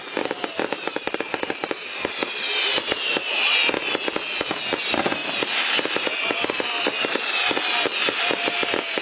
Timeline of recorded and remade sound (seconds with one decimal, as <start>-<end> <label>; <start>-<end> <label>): 0.0-3.5 remade; 3.5-4.8 recorded; 4.8-5.2 remade; 5.2-8.0 recorded; 8.0-9.0 remade